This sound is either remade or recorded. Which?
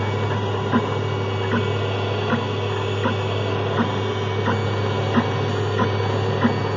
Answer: recorded